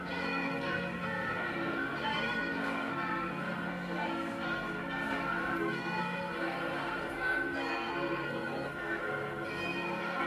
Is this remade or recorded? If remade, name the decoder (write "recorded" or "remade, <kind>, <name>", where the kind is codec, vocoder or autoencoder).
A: remade, codec, SNAC